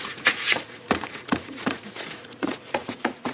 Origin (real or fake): fake